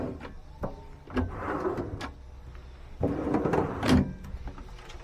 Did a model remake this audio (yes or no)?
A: no